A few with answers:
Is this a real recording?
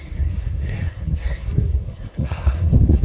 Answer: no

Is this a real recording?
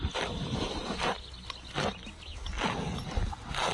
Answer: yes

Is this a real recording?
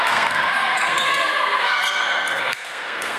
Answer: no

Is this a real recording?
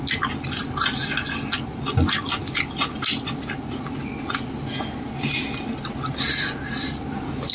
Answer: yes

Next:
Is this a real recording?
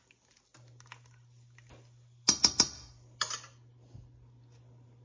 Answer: yes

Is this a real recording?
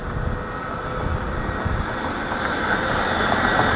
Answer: yes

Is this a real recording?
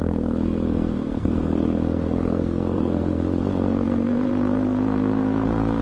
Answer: no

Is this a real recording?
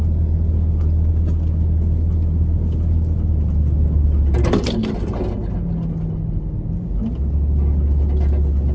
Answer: yes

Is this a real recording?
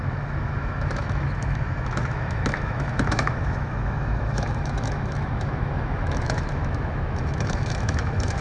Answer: no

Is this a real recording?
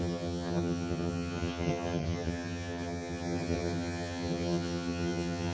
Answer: no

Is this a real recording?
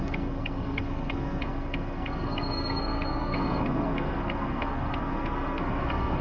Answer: no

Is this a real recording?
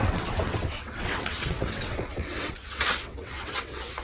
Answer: no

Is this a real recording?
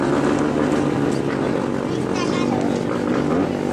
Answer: yes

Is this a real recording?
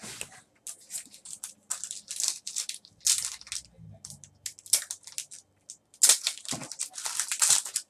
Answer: yes